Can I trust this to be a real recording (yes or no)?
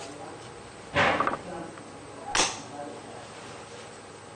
yes